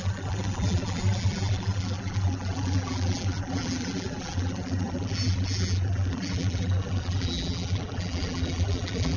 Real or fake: fake